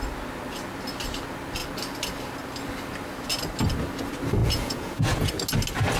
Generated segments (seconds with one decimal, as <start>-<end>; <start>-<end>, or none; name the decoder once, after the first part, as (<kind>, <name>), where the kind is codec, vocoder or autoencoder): 4.4-5.3 (vocoder, Vocos)